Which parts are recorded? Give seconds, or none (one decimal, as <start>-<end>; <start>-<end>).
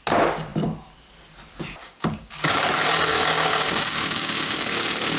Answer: 0.0-1.8; 2.6-3.1